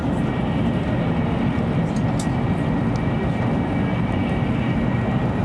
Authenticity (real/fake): real